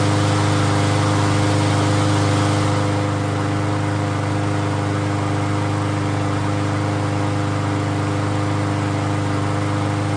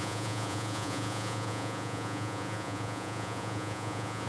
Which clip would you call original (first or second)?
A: first